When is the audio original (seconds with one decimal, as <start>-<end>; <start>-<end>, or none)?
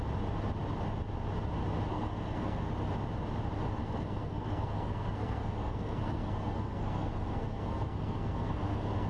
0.0-1.9; 2.7-3.8